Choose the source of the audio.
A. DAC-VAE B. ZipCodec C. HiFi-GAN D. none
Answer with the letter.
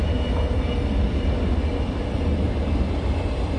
D